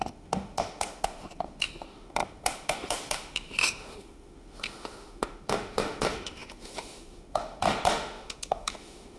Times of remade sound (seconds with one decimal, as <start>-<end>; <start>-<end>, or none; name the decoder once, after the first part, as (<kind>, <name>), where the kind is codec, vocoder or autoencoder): 0.0-9.2 (autoencoder, DAC-VAE)